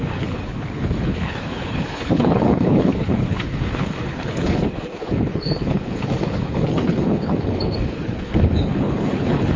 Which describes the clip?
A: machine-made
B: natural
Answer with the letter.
A